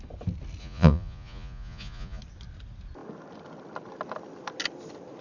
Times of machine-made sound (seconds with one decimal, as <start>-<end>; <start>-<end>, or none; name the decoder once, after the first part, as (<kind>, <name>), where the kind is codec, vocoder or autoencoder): 0.6-2.2 (vocoder, Vocos)